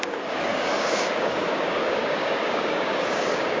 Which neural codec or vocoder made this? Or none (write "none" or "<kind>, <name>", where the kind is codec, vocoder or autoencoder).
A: codec, DAC